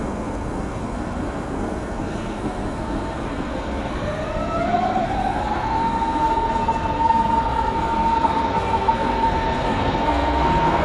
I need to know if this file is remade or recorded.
remade